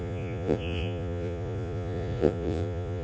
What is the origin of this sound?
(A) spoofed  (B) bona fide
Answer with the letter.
A